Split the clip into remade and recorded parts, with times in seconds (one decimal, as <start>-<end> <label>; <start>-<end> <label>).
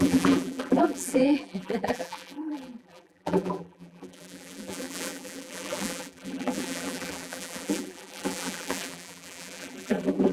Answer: 0.0-10.3 remade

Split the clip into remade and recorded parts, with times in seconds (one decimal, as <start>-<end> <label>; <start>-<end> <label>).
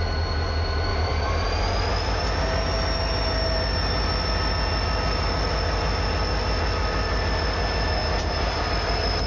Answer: 0.0-0.9 recorded; 0.9-1.7 remade; 1.7-8.0 recorded; 8.0-8.6 remade; 8.6-9.3 recorded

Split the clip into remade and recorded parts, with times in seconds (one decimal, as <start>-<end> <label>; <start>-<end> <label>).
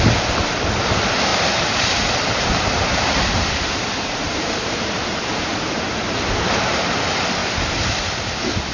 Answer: 0.0-1.3 recorded; 1.3-6.5 remade; 6.5-7.4 recorded; 7.4-8.0 remade; 8.0-8.7 recorded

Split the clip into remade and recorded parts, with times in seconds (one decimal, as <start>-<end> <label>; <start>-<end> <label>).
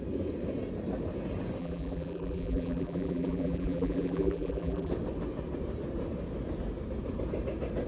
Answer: 0.0-1.6 recorded; 1.6-4.9 remade; 4.9-7.9 recorded